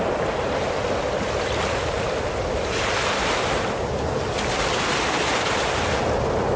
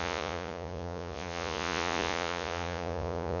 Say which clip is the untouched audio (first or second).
first